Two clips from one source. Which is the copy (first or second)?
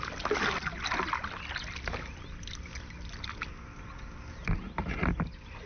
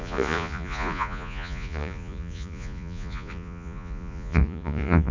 second